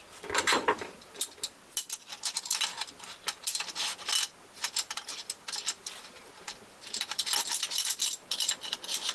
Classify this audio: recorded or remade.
recorded